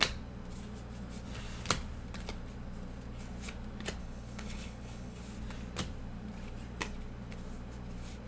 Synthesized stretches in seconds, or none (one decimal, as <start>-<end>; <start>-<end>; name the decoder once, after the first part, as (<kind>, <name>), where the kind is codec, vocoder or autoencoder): 4.0-5.2 (codec, HILCodec)